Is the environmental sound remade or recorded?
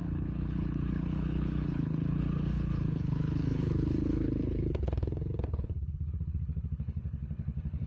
remade